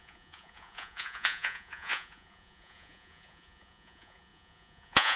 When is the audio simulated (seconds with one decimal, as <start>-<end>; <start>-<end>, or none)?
0.0-5.2